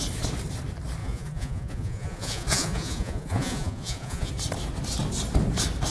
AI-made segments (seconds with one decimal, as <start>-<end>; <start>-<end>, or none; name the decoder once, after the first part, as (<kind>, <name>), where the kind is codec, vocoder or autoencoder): 1.0-4.3 (vocoder, Vocos)